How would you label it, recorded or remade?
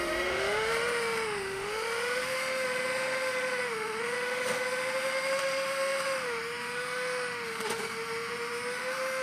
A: remade